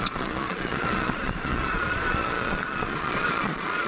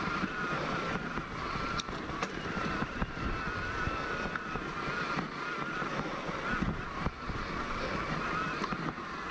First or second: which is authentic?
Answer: second